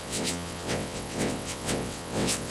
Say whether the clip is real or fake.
fake